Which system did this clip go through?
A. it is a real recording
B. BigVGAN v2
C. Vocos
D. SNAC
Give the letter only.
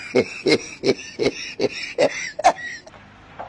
A